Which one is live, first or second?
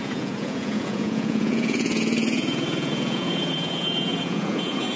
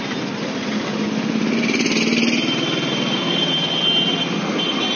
second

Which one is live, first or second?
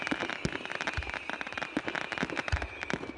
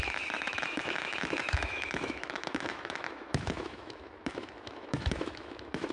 first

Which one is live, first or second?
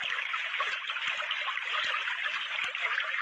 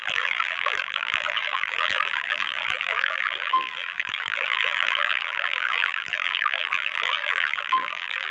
first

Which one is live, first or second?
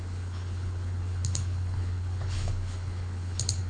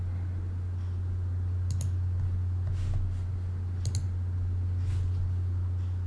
second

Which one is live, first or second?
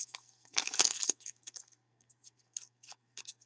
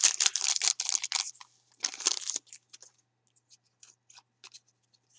second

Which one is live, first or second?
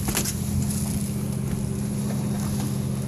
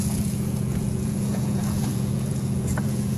first